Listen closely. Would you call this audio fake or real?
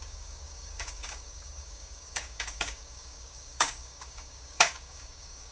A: fake